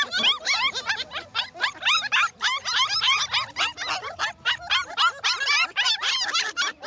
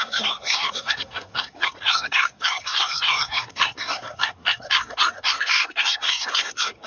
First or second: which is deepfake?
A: second